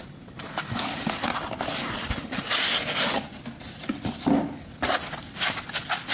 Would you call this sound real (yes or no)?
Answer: yes